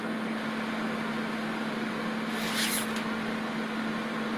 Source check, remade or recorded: recorded